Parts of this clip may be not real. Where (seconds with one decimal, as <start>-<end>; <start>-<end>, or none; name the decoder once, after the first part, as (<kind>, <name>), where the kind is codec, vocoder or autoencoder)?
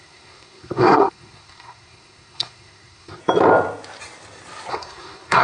0.0-3.2 (codec, SNAC); 4.7-5.4